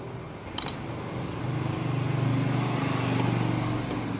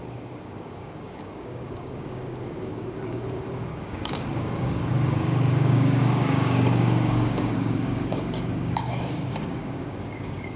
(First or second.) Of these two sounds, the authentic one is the first